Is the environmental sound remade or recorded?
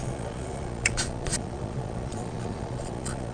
remade